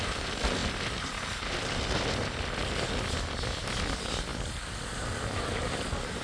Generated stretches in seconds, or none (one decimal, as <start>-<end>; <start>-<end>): none